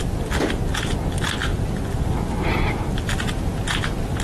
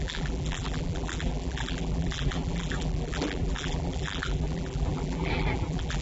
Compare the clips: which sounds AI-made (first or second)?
second